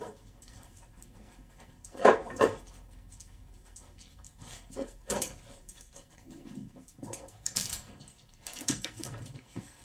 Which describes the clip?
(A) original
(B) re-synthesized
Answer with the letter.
B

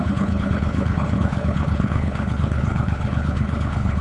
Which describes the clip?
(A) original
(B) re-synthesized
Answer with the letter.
B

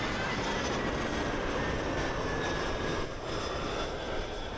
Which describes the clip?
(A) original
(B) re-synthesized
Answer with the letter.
A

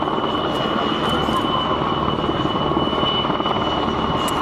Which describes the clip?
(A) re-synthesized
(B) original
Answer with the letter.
B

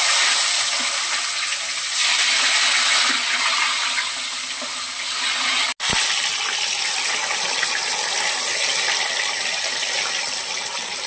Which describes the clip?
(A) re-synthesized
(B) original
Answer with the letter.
B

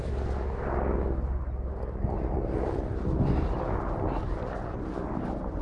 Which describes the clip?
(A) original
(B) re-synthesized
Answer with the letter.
A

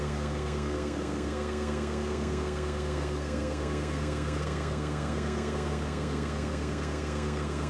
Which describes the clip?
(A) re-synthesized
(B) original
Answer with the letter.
A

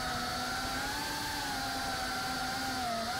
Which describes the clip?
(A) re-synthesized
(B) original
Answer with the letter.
B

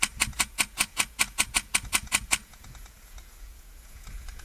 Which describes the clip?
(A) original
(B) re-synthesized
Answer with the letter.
B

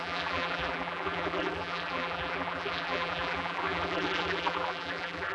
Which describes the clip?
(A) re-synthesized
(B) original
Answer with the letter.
A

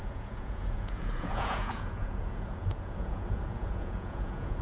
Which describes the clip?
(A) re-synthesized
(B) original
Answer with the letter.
A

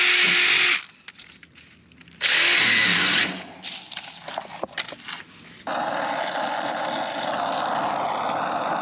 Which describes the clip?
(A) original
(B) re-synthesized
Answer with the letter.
A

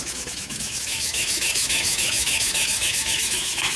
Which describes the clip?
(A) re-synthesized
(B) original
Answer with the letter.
A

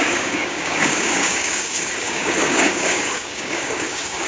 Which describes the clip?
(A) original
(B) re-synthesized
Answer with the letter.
B